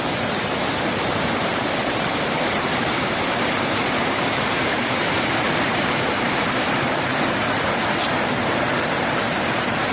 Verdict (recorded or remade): remade